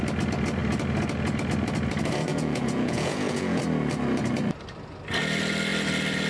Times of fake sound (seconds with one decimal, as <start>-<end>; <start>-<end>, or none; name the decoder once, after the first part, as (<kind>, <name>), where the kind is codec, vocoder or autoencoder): 2.3-3.6 (vocoder, Vocos)